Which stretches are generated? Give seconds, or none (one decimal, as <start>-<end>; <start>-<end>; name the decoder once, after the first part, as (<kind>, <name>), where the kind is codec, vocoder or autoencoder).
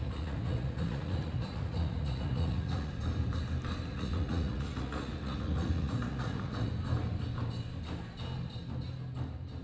0.0-2.9 (vocoder, Vocos); 3.9-6.7